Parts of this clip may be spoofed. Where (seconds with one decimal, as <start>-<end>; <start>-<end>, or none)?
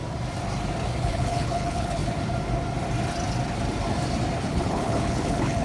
1.0-2.0; 4.5-5.6